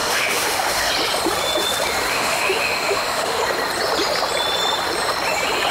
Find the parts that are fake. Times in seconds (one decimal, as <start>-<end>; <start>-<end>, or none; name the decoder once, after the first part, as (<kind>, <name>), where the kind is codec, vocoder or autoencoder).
0.0-0.9 (autoencoder, DAC-VAE); 2.1-3.4